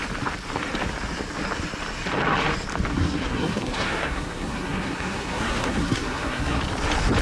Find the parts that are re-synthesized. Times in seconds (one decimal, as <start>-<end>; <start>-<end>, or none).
2.9-6.6